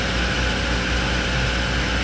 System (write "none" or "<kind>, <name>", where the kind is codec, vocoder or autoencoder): none